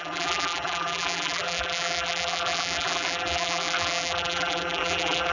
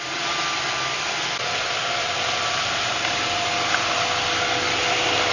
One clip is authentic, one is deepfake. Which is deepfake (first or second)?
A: first